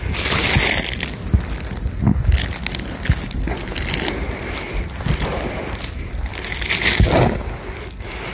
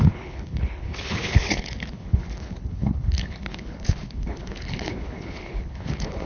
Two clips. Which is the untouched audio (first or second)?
first